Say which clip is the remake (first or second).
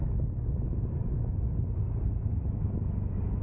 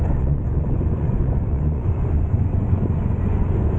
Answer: second